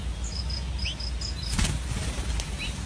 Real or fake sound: real